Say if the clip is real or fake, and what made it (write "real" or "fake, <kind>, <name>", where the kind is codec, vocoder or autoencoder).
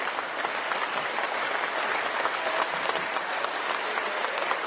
real